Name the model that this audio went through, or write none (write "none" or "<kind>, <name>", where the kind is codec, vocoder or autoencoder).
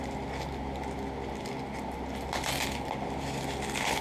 none